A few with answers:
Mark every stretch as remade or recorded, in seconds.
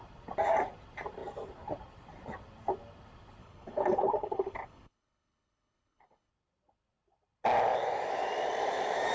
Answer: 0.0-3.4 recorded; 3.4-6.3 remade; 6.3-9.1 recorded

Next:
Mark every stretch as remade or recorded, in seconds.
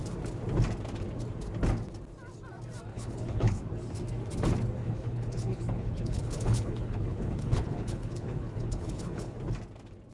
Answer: 0.0-2.9 recorded; 2.9-3.6 remade; 3.6-4.8 recorded; 4.8-9.4 remade; 9.4-10.1 recorded